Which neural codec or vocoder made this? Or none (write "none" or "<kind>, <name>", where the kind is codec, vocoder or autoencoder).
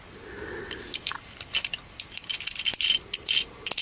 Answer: none